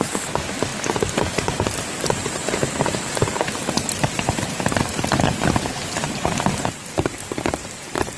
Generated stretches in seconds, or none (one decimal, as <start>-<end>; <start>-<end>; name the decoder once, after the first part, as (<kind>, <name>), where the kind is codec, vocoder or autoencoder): 0.0-0.7 (vocoder, BigVGAN v2); 1.3-8.2